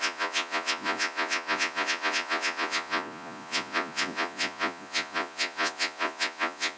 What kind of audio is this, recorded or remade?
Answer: remade